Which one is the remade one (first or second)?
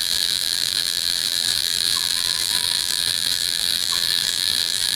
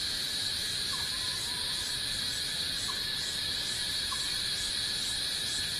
first